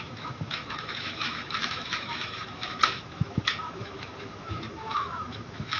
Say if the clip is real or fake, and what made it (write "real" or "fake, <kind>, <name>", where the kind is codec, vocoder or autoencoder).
fake, autoencoder, DAC-VAE